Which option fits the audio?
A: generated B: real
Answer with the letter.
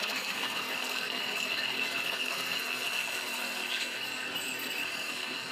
A